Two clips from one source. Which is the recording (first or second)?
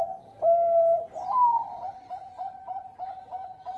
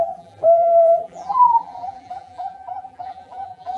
first